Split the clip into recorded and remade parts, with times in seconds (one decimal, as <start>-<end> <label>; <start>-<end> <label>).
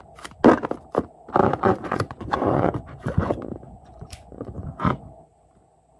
0.0-1.4 recorded; 1.4-5.0 remade; 5.0-6.0 recorded